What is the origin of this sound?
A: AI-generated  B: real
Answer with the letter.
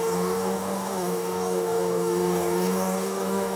A